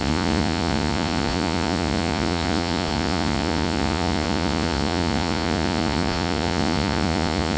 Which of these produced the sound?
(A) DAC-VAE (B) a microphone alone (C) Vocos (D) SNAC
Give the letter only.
C